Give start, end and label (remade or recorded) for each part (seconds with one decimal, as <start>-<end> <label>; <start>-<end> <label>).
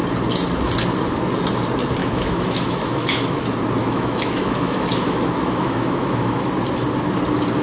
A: 0.0-2.0 recorded; 2.0-3.3 remade; 3.3-3.8 recorded; 3.8-6.5 remade; 6.5-7.6 recorded